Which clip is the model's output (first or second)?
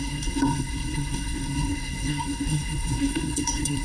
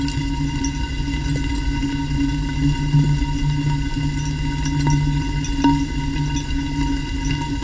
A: first